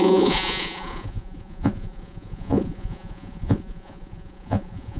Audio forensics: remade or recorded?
remade